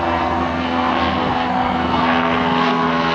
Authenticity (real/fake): fake